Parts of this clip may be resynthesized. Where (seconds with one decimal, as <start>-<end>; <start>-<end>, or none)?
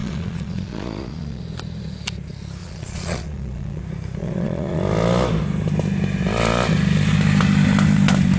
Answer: 0.0-1.4; 2.6-3.8; 4.2-4.8